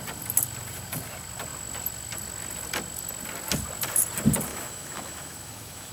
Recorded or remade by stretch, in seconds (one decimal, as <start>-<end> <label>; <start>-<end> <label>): 0.0-4.5 recorded; 4.5-5.9 remade